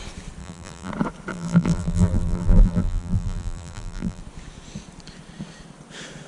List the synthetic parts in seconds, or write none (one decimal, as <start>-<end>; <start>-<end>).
0.4-0.9; 1.3-4.2